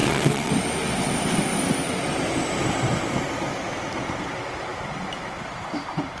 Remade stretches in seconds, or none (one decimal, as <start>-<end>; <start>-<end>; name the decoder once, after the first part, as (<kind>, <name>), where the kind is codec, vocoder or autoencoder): 0.0-0.5 (vocoder, WaveNeXt)